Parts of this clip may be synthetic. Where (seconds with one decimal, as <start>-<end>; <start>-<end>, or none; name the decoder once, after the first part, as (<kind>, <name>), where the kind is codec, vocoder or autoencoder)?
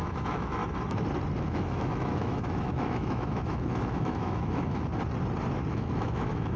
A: 0.0-0.6 (autoencoder, DAC-VAE); 1.4-4.9; 5.7-6.6